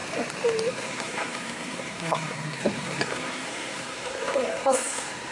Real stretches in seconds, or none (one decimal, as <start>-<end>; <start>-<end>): 0.0-0.7